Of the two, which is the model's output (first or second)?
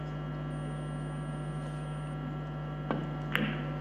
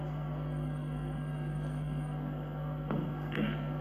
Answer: second